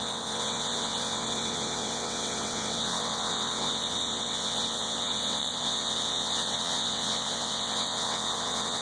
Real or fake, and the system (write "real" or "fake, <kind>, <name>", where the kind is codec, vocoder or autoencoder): fake, vocoder, WaveNeXt